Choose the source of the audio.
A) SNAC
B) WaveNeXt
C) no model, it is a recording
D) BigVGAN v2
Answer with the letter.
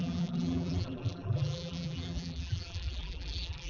D